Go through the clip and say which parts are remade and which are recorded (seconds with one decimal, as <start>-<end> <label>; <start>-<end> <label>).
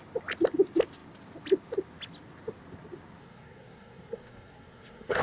0.0-3.2 recorded; 3.2-5.2 remade